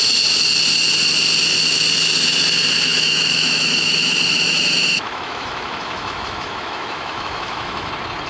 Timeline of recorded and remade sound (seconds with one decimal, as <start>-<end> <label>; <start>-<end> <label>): 0.0-2.9 recorded; 2.9-7.9 remade; 7.9-8.3 recorded